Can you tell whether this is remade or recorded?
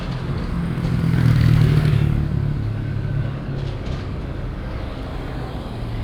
remade